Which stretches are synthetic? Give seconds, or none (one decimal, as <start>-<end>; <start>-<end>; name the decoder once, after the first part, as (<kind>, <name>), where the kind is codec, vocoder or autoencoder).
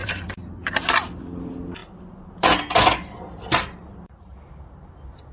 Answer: 0.0-0.7 (vocoder, BigVGAN v2)